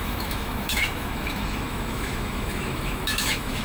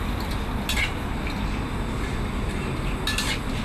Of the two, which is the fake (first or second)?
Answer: first